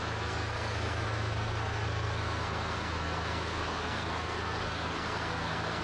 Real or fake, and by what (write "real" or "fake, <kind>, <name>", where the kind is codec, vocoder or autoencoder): fake, codec, SNAC